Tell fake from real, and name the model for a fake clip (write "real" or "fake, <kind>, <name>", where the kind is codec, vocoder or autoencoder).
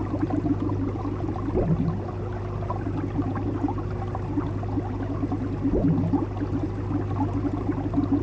real